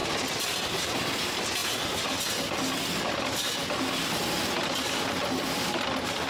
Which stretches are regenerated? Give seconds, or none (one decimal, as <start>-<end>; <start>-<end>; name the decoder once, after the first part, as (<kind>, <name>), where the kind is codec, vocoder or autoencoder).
0.0-0.9 (vocoder, BigVGAN v2)